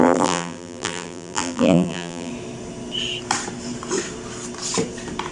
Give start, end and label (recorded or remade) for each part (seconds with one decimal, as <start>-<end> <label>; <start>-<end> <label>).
0.0-2.3 remade; 2.3-5.3 recorded